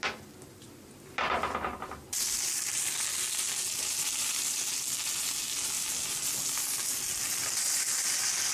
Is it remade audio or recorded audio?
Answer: recorded